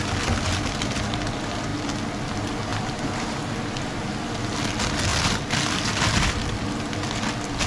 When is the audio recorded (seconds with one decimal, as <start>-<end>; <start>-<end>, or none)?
0.0-2.7; 3.4-5.1; 6.7-7.7